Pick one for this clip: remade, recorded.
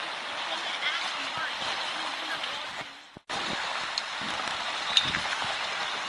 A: recorded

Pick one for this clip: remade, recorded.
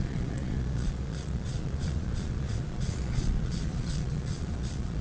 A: remade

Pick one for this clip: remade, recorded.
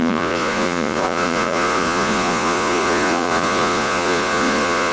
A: remade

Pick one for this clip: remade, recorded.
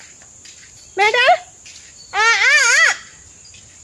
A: recorded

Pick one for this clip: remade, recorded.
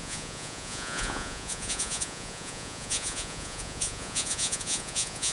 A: remade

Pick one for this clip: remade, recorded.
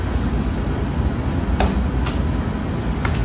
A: recorded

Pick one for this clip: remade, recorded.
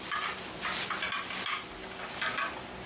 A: recorded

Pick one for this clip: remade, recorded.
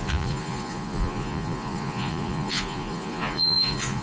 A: remade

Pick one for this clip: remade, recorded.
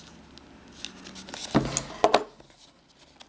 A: recorded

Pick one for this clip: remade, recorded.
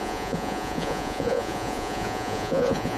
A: remade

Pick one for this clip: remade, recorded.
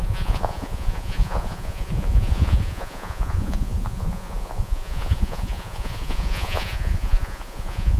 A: remade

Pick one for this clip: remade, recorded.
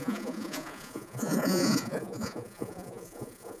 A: remade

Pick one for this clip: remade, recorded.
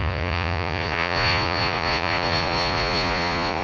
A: remade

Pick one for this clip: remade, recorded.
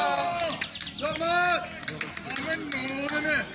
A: recorded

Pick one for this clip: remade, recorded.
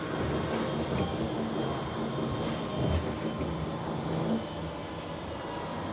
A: recorded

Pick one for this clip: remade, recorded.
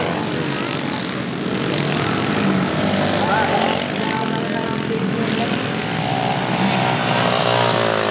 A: recorded